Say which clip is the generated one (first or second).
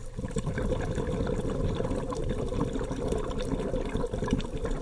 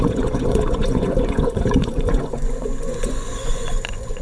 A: second